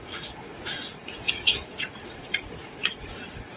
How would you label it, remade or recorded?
remade